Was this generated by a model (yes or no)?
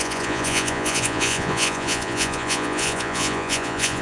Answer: yes